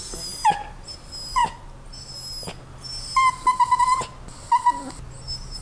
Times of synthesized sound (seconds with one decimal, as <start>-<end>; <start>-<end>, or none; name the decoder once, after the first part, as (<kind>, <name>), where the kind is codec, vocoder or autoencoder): none